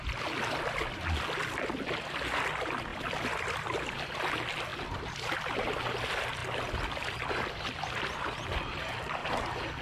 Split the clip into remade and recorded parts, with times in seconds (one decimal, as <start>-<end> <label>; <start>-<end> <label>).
0.0-2.9 recorded; 2.9-4.2 remade; 4.2-4.7 recorded; 4.7-5.3 remade; 5.3-9.2 recorded; 9.2-9.8 remade